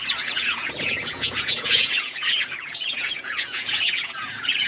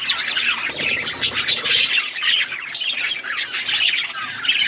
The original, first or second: second